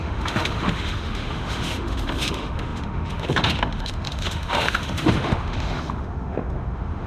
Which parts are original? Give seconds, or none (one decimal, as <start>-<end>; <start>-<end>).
none